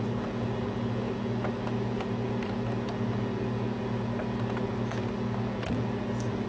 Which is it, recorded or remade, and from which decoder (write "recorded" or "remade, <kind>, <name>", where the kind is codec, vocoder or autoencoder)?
recorded